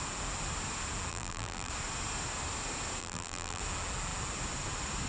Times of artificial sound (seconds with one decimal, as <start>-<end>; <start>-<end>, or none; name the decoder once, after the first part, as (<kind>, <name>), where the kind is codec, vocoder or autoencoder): 1.1-1.7 (vocoder, BigVGAN v2); 3.0-3.6